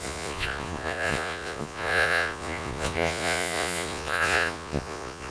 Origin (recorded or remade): remade